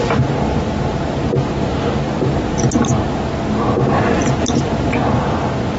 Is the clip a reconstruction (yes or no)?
no